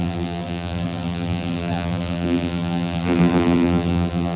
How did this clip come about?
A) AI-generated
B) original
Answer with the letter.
A